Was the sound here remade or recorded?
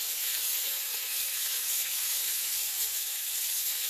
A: remade